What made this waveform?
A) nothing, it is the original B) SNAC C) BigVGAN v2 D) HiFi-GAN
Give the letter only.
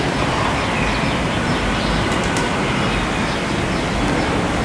A